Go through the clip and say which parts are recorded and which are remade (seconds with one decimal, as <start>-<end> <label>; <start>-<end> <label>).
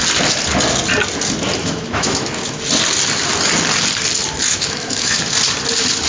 0.0-1.6 recorded; 1.6-2.6 remade; 2.6-4.5 recorded; 4.5-5.2 remade; 5.2-6.1 recorded